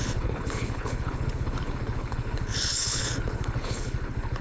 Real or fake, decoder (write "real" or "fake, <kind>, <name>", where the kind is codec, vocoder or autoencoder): fake, codec, HILCodec